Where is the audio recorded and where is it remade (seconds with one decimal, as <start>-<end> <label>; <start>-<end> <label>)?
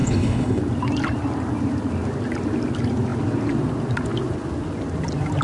0.0-0.6 remade; 0.6-5.4 recorded